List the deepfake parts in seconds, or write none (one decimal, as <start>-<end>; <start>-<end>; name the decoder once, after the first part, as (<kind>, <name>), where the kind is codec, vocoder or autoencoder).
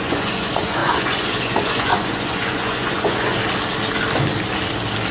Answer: 0.0-3.4 (vocoder, Vocos)